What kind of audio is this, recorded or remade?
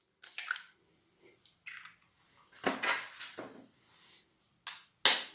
recorded